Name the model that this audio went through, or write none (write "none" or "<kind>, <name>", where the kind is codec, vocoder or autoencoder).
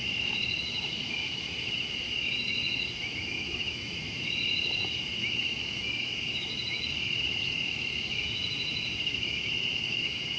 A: autoencoder, DAC-VAE